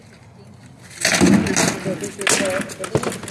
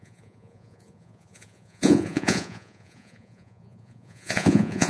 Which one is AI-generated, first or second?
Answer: second